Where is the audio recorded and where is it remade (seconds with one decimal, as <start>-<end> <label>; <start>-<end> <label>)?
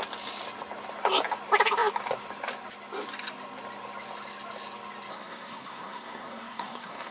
0.0-5.1 recorded; 5.1-7.1 remade